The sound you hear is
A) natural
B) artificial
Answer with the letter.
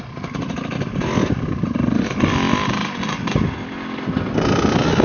A